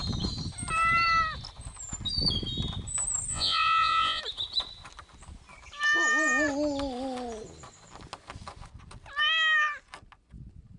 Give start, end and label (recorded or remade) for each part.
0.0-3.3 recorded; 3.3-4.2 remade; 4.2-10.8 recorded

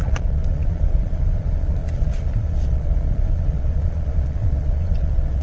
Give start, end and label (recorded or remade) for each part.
0.0-5.4 remade

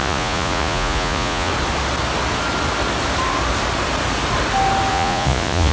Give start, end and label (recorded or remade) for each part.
0.0-1.5 remade; 1.5-4.9 recorded; 4.9-5.7 remade

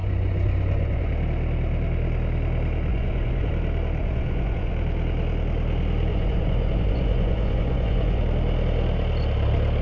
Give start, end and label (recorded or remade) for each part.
0.0-1.1 remade; 1.1-2.9 recorded; 2.9-3.5 remade; 3.5-4.0 recorded; 4.0-4.7 remade; 4.7-6.1 recorded; 6.1-8.2 remade; 8.2-9.8 recorded

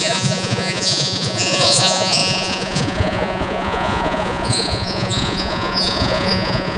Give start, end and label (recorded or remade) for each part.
0.0-6.8 remade